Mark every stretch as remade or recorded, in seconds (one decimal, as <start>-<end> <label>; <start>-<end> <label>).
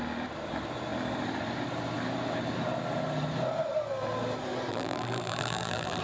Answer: 0.0-4.7 recorded; 4.7-6.0 remade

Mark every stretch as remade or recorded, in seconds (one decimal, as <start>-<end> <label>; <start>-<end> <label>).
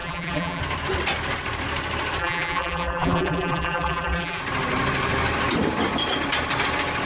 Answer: 0.0-0.6 remade; 0.6-2.2 recorded; 2.2-4.4 remade; 4.4-7.1 recorded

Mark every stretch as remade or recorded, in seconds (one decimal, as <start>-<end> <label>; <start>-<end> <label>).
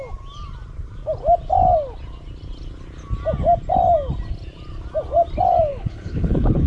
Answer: 0.0-5.7 recorded; 5.7-6.7 remade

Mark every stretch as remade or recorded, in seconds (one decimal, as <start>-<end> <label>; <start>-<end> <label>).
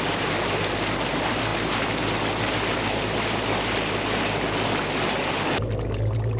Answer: 0.0-6.4 recorded